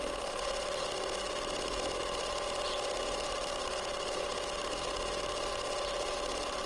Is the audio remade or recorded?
recorded